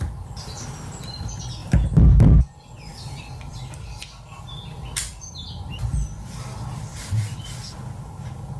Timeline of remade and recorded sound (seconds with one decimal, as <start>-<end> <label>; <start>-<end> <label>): 0.0-6.9 recorded; 6.9-8.1 remade; 8.1-8.6 recorded